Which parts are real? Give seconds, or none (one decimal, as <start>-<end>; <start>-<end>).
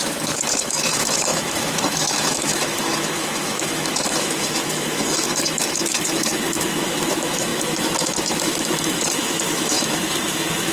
none